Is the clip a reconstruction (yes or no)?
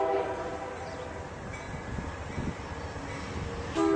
no